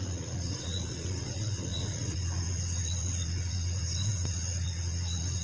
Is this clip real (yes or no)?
no